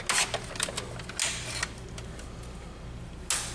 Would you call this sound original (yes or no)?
yes